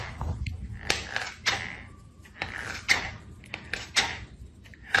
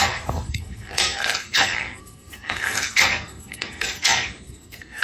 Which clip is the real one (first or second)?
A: first